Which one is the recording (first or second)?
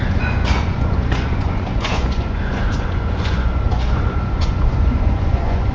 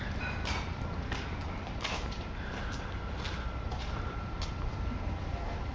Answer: second